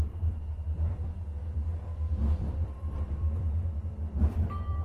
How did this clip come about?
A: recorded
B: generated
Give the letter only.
B